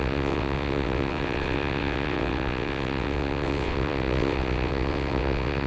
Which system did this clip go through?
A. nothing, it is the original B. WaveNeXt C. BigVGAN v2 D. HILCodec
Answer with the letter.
B